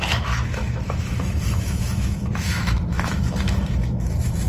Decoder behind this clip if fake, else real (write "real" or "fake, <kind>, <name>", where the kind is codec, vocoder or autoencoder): fake, autoencoder, DAC-VAE